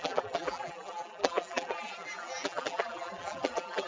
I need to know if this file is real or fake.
fake